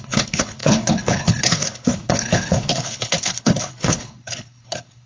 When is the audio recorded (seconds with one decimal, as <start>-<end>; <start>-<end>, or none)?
none